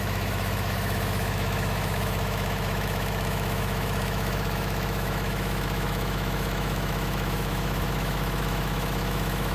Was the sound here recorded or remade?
remade